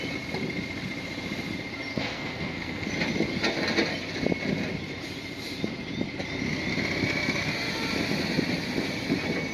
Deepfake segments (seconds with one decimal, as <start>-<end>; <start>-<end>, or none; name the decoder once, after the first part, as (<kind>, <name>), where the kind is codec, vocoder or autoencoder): 1.9-2.9 (codec, SNAC)

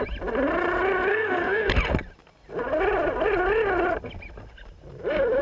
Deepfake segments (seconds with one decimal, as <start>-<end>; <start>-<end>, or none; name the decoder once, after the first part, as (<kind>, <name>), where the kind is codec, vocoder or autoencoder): 1.1-1.7 (codec, SNAC)